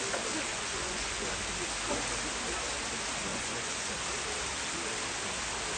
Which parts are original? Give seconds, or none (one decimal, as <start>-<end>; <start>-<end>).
0.0-0.5; 1.3-3.3; 4.0-5.8